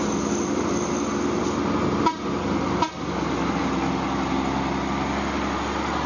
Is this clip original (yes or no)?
yes